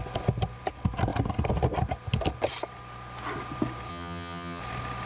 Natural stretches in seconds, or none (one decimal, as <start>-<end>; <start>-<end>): 0.0-3.9; 4.6-5.1